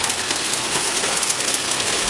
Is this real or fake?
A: fake